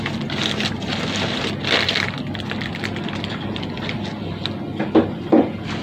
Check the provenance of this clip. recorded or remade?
recorded